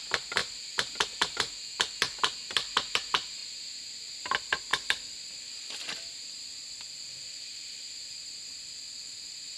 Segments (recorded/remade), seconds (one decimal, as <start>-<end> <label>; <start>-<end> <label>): 0.0-4.7 recorded; 4.7-9.6 remade